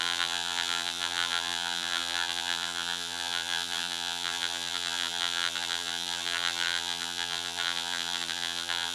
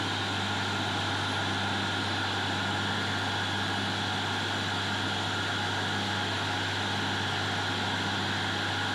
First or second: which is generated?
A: first